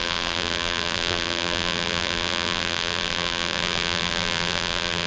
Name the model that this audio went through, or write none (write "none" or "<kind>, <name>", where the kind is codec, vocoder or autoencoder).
vocoder, BigVGAN v2